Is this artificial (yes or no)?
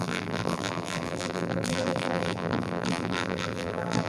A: yes